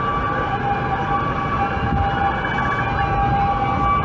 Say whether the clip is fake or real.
real